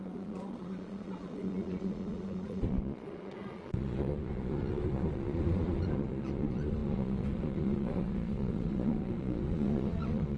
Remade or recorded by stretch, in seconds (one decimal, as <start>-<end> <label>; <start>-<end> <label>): 0.0-10.4 remade